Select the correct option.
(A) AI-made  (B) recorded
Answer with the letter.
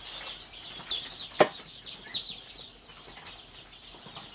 B